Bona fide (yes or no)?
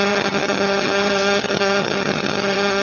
no